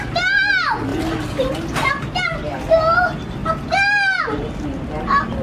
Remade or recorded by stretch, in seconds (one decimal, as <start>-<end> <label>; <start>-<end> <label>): 0.0-5.4 recorded